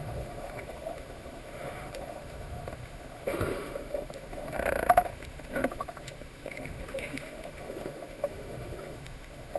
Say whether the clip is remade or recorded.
remade